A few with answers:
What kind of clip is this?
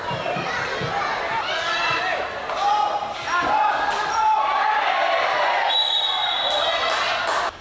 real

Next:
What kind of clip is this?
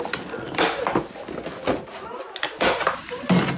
real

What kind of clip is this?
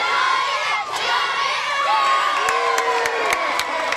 fake